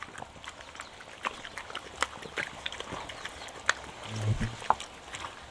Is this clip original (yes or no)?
yes